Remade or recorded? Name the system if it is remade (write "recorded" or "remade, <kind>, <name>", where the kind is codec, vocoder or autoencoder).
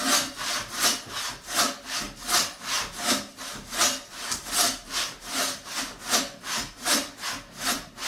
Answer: recorded